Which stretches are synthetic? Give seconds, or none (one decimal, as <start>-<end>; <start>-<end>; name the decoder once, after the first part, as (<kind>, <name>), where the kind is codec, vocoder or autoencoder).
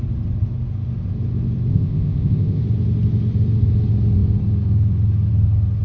1.7-2.6 (codec, ZipCodec)